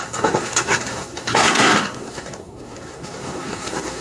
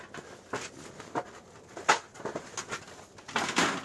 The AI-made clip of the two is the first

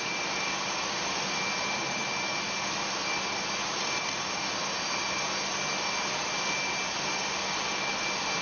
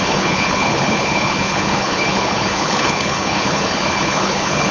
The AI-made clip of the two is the second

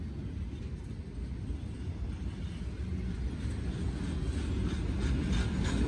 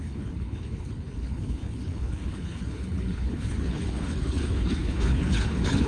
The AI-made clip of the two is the second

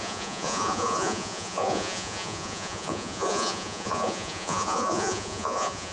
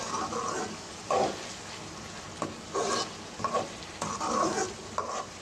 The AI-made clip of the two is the first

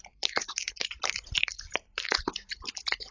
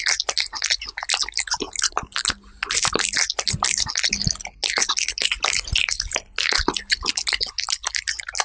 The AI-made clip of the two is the first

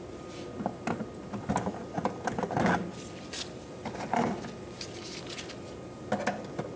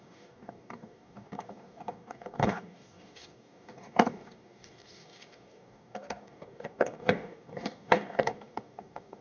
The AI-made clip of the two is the second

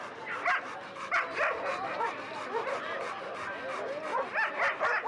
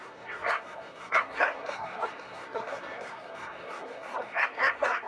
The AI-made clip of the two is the second